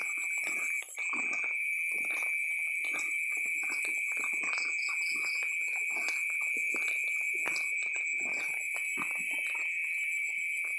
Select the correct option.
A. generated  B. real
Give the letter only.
A